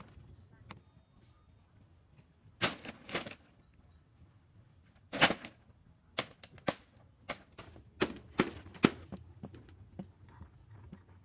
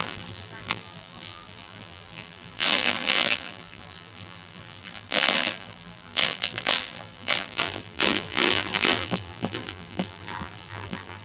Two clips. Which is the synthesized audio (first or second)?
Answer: second